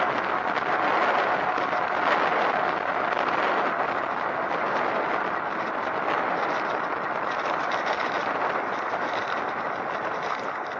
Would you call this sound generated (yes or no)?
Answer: no